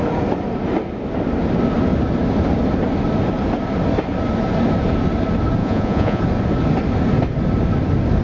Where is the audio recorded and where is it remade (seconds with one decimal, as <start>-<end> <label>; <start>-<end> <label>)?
0.0-5.6 recorded; 5.6-6.2 remade; 6.2-8.2 recorded